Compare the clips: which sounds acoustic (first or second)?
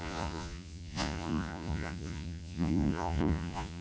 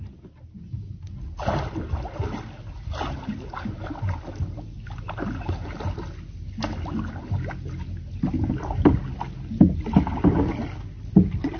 second